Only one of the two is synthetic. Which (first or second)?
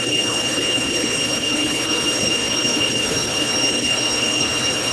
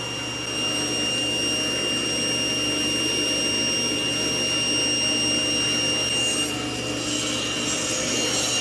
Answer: first